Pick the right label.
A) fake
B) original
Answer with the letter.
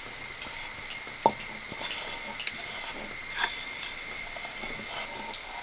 B